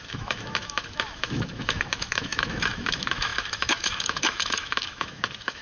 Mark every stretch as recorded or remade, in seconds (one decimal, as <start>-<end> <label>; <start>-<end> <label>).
0.0-5.6 remade